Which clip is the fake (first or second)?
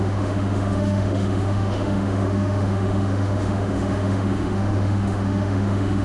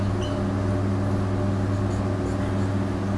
first